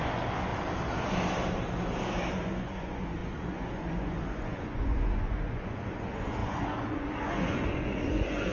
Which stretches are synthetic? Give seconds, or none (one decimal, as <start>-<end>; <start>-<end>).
0.0-0.5; 2.3-8.5